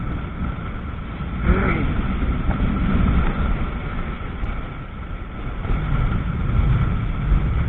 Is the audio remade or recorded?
recorded